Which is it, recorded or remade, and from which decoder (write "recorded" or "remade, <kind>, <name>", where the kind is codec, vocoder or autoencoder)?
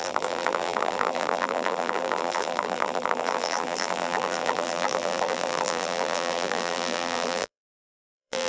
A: remade, vocoder, BigVGAN v2